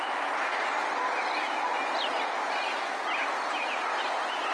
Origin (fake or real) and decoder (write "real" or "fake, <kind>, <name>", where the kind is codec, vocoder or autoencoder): real